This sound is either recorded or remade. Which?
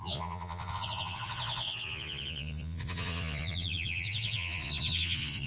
remade